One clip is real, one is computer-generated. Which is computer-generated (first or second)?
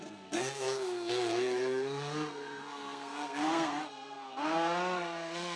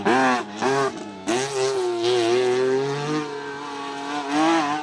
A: first